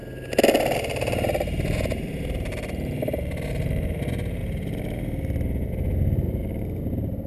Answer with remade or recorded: remade